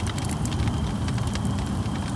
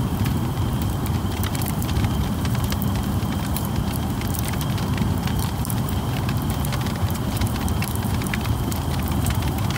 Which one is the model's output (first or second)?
second